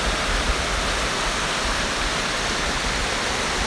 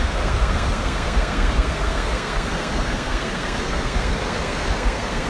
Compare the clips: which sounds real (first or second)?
first